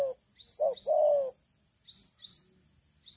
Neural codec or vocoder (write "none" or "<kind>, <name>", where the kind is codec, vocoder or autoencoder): none